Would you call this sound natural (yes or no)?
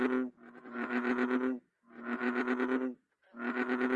yes